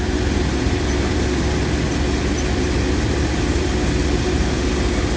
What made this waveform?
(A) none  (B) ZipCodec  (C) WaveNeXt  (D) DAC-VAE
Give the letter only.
A